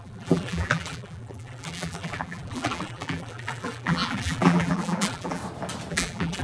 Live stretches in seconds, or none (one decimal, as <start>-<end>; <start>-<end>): 5.4-5.9